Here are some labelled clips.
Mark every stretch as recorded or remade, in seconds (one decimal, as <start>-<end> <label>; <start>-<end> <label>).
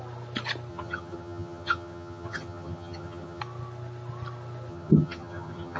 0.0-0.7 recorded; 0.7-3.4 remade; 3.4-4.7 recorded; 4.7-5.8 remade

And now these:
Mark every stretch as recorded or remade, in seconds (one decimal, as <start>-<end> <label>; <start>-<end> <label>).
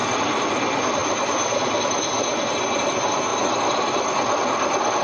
0.0-0.5 remade; 0.5-3.3 recorded; 3.3-5.0 remade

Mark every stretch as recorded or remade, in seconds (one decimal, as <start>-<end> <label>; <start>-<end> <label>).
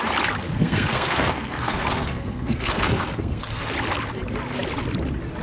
0.0-0.5 recorded; 0.5-3.7 remade; 3.7-5.4 recorded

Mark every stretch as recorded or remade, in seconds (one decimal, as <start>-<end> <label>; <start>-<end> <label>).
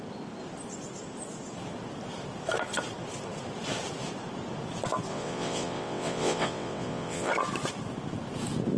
0.0-5.1 recorded; 5.1-7.3 remade; 7.3-8.8 recorded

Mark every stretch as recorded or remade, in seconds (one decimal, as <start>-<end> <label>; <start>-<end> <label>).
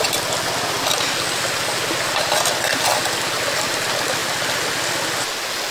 0.0-5.7 recorded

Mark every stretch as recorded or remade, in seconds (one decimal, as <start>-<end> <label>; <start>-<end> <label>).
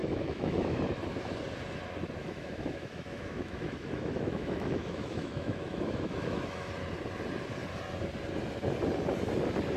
0.0-0.8 remade; 0.8-2.2 recorded; 2.2-6.7 remade; 6.7-9.8 recorded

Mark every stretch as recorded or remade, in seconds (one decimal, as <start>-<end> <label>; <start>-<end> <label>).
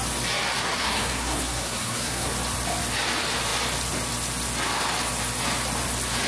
0.0-0.6 recorded; 0.6-2.3 remade; 2.3-6.3 recorded